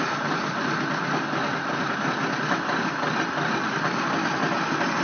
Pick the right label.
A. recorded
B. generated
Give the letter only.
A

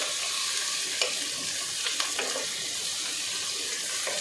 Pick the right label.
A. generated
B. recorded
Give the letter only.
B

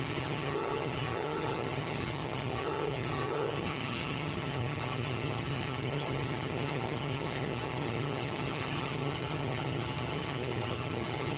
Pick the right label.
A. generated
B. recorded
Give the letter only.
A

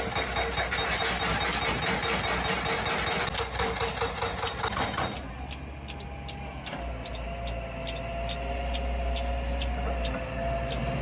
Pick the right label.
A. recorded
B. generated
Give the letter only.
A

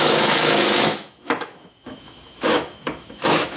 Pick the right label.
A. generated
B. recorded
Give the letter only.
A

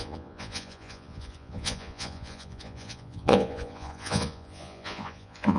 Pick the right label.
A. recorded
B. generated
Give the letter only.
B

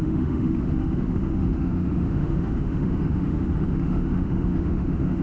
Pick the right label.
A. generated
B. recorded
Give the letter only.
A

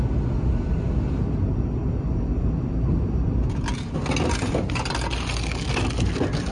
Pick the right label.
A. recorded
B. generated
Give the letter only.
A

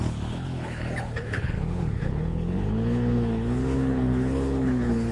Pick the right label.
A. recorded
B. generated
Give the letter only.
B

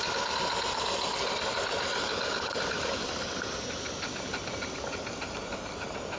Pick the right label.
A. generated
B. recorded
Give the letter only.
B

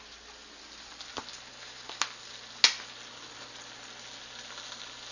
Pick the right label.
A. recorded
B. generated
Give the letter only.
A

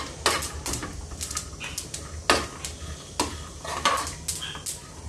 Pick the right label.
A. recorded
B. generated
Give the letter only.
A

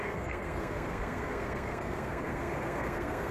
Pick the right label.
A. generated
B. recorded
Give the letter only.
A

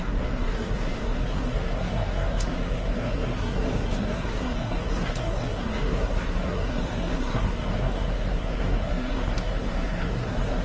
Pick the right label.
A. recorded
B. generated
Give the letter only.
B